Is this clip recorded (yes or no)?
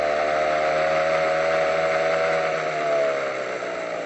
yes